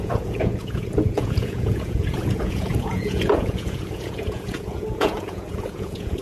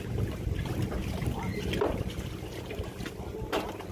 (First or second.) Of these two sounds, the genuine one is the second